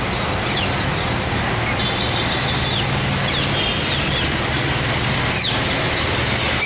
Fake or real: real